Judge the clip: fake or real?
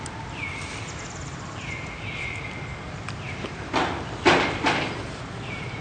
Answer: real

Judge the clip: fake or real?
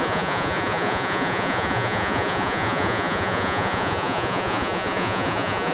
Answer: fake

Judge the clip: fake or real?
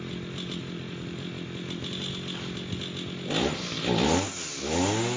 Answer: real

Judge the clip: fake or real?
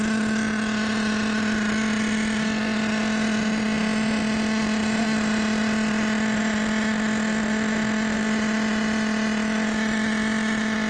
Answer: real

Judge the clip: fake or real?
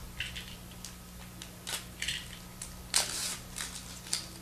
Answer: real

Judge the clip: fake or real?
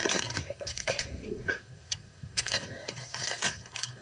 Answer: fake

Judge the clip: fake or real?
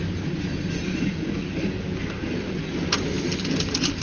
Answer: real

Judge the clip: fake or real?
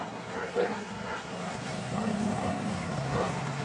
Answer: fake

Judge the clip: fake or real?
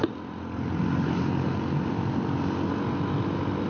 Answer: real